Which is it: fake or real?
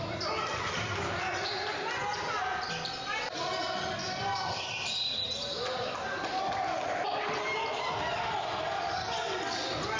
real